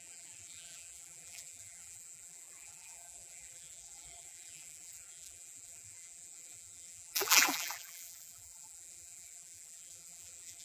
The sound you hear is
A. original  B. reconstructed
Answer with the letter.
B